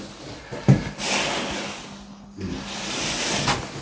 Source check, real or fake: real